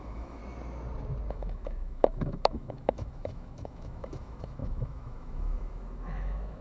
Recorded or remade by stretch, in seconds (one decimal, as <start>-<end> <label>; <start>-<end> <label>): 0.0-0.4 remade; 0.4-1.3 recorded; 1.3-6.6 remade